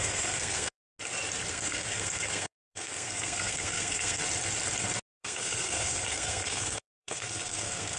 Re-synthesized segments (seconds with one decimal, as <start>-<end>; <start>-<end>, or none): 0.0-0.8; 1.5-4.2; 5.2-8.0